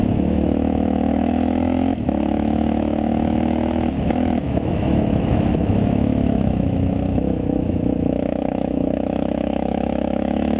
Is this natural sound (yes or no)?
no